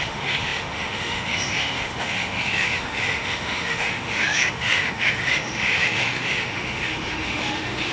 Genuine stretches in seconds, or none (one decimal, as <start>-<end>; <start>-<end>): none